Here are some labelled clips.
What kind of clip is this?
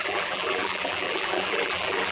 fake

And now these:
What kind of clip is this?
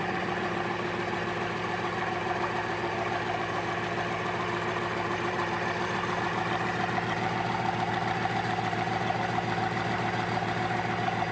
fake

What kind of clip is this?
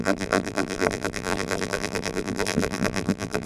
fake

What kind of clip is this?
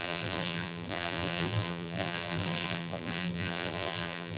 fake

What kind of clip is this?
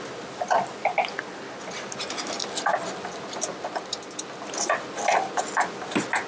real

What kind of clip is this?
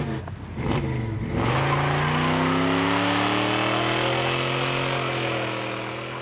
real